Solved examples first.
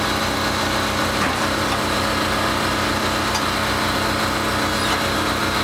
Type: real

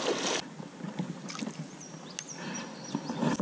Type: real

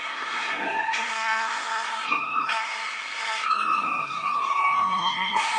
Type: fake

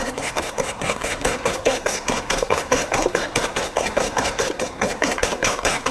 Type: fake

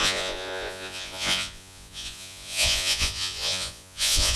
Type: fake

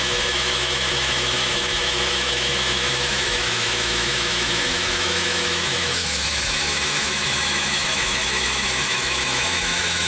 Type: fake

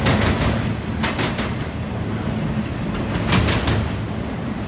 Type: real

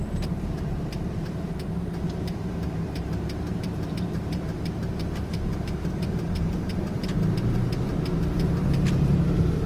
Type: fake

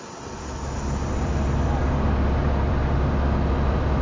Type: real